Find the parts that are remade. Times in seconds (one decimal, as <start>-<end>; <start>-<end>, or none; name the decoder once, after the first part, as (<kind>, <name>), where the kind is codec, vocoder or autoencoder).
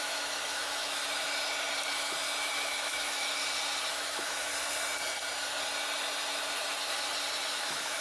0.0-1.0 (autoencoder, DAC-VAE); 2.5-3.4; 3.9-4.5; 7.5-8.0